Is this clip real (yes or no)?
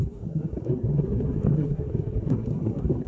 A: no